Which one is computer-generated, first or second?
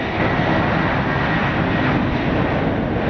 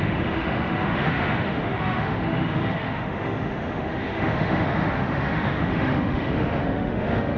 second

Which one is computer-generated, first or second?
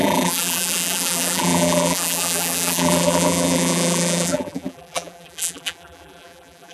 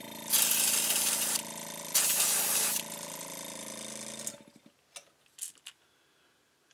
first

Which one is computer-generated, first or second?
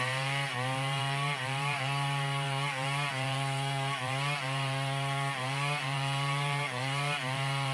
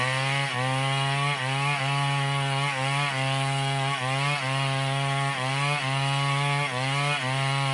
first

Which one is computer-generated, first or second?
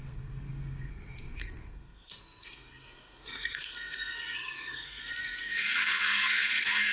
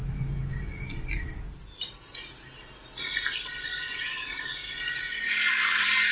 first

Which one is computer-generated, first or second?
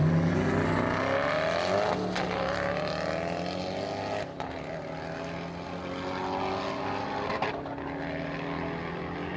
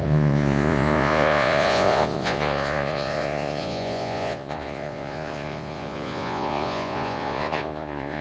second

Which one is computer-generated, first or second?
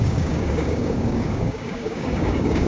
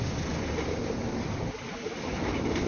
first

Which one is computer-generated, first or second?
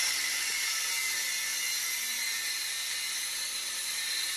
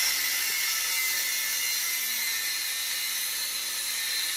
first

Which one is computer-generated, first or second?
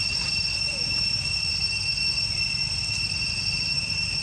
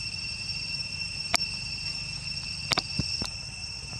second